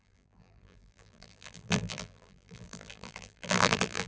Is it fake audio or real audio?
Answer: fake